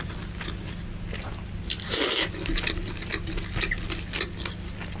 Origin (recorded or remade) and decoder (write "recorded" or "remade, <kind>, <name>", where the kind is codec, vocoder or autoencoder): recorded